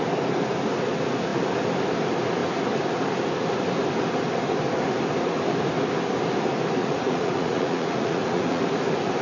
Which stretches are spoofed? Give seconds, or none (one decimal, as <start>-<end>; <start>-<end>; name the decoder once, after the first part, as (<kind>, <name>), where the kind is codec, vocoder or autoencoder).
6.8-8.6 (vocoder, Vocos)

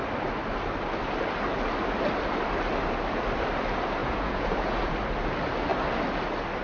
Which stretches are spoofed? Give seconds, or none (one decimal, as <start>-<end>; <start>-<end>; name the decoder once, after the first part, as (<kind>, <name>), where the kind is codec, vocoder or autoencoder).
4.0-4.9 (vocoder, Vocos)

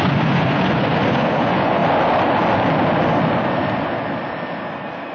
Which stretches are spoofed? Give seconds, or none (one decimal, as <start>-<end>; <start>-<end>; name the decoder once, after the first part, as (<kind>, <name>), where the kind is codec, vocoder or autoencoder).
0.0-1.8 (vocoder, Vocos)